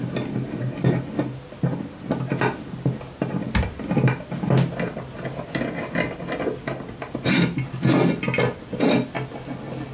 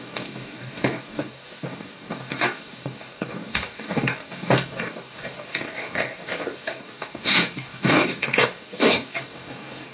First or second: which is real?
first